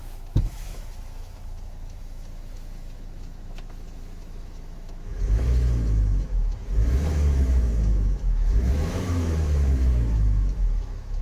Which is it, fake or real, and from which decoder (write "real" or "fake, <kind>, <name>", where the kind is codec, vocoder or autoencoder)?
fake, autoencoder, DAC-VAE